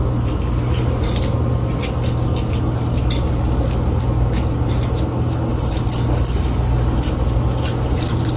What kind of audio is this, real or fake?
real